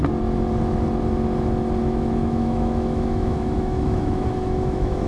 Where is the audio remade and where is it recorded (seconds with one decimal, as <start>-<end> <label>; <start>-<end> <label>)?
0.0-1.8 recorded; 1.8-5.1 remade